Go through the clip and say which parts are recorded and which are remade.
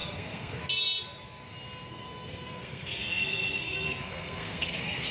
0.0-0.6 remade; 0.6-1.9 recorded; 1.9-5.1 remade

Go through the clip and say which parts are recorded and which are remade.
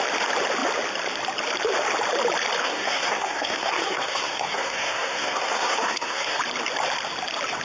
0.0-2.6 recorded; 2.6-6.4 remade; 6.4-7.6 recorded